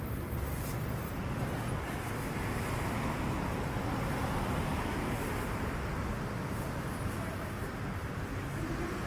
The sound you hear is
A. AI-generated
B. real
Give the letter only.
B